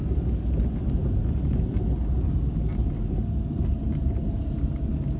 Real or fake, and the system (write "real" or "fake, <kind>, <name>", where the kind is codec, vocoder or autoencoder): real